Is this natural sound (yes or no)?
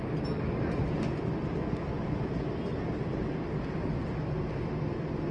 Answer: yes